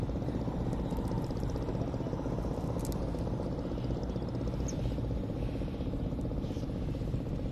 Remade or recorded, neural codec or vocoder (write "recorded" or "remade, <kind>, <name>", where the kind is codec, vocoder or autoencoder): recorded